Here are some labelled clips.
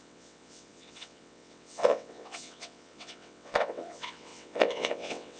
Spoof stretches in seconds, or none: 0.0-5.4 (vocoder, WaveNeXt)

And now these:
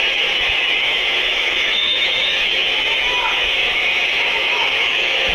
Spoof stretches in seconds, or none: 0.0-5.3 (autoencoder, DAC-VAE)

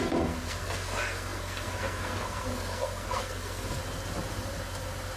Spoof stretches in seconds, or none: 0.0-3.8 (codec, SNAC)

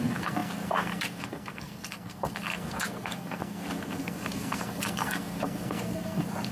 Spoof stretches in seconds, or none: 0.0-6.5 (codec, SNAC)

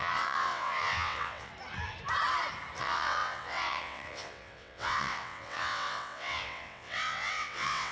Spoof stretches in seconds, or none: 0.0-1.5 (vocoder, WaveNeXt); 2.8-7.9

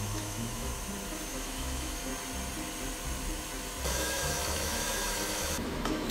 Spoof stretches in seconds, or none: 0.0-0.7 (autoencoder, DAC-VAE); 1.3-2.1; 3.9-6.1

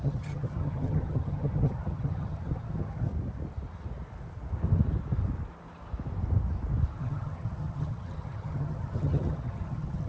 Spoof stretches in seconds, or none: 0.0-3.1 (vocoder, HiFi-GAN); 7.0-10.1

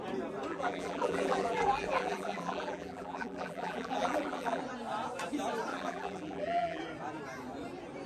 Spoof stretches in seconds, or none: 0.5-4.6 (vocoder, BigVGAN v2); 5.7-6.8